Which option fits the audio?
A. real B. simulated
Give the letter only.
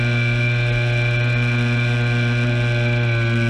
A